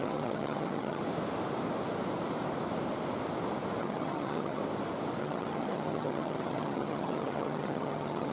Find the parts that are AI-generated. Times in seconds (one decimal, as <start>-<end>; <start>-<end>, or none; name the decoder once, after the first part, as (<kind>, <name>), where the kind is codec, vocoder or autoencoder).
0.0-1.0 (vocoder, HiFi-GAN); 3.8-4.6; 5.2-8.3